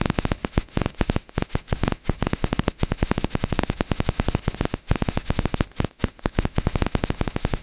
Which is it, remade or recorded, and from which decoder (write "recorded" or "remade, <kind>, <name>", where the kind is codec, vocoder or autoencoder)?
remade, autoencoder, DAC-VAE